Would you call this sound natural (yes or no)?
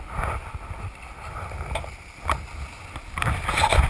yes